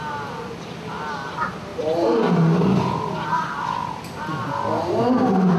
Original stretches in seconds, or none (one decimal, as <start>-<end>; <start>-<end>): 0.0-5.6